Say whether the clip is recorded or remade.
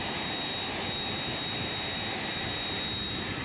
recorded